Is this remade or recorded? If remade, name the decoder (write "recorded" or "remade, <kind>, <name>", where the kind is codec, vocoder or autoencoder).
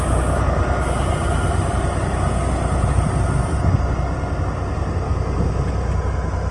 recorded